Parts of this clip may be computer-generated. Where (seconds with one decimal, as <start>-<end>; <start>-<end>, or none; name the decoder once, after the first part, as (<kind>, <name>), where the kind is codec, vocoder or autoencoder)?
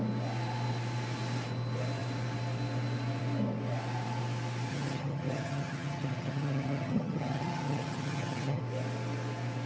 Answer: 4.7-8.6 (vocoder, HiFi-GAN)